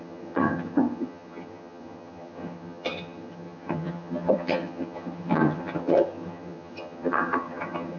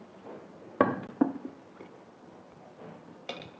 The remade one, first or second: first